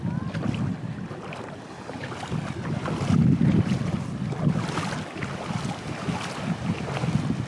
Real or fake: real